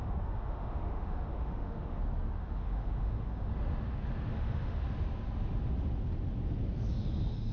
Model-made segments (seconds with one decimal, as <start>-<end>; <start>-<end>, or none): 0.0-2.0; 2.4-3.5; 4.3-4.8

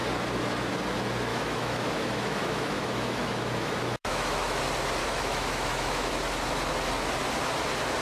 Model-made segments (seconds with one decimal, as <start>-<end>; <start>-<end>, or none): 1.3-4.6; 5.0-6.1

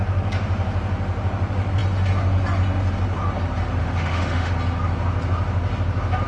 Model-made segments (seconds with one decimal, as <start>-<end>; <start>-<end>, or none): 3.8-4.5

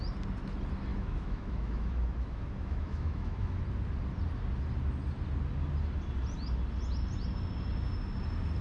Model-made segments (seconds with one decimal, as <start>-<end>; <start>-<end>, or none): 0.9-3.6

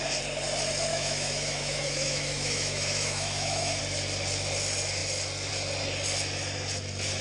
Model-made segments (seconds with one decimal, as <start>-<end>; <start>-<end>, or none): 0.9-3.8

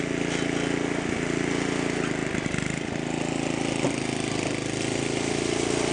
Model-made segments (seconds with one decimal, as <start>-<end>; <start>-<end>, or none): none

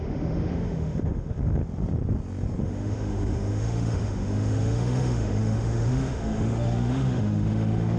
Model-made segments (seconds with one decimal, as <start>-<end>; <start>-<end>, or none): 0.0-1.6; 2.6-8.0